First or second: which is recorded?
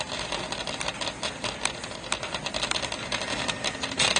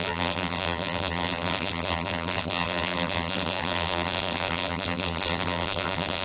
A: first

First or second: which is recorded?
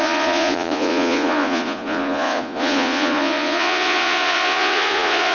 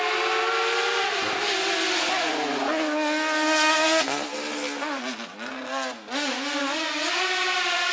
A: second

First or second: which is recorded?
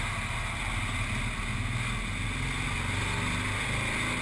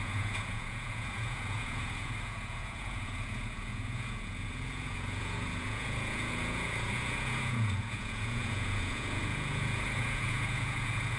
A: first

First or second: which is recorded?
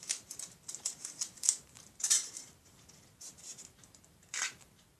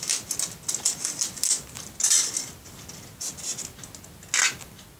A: second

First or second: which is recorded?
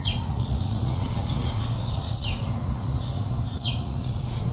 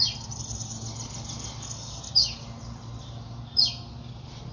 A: second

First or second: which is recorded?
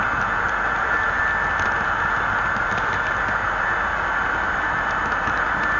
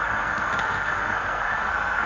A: first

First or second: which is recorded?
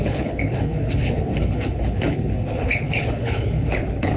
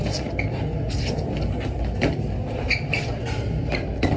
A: second